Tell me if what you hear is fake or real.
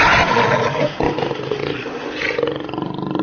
real